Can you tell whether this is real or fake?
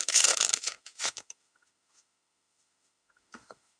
fake